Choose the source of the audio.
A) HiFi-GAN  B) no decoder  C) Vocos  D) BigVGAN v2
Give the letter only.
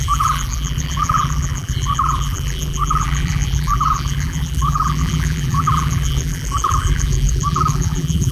D